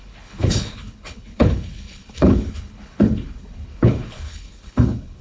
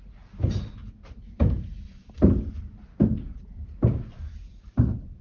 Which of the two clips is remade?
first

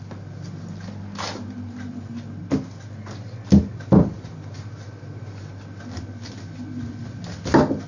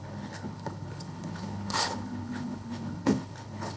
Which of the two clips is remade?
second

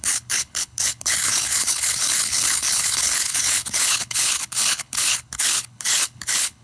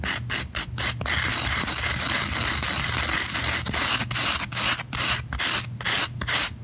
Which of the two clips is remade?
first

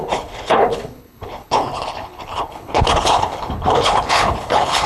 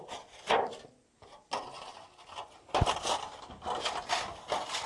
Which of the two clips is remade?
first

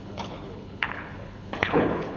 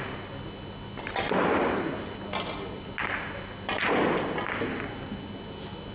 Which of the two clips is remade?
first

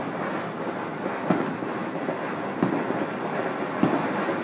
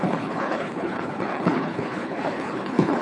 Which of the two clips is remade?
second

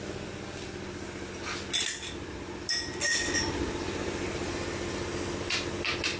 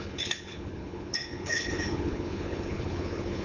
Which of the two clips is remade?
second